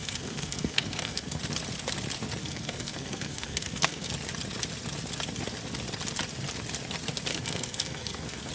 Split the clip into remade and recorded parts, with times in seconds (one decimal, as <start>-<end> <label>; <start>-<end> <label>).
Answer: 0.0-1.4 remade; 1.4-2.4 recorded; 2.4-4.1 remade; 4.1-7.3 recorded; 7.3-8.5 remade